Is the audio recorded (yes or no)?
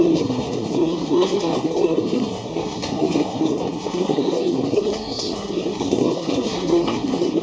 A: no